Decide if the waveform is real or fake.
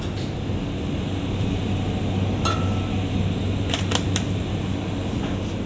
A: real